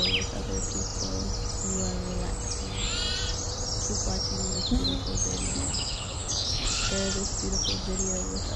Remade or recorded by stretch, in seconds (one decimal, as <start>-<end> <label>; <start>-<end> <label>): 0.0-5.5 recorded; 5.5-6.9 remade; 6.9-8.6 recorded